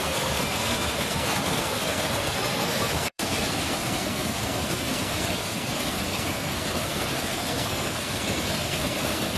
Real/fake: fake